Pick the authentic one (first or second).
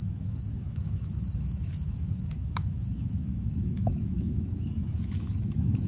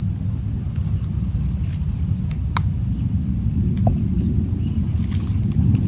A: second